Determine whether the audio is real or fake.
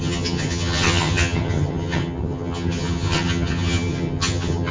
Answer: fake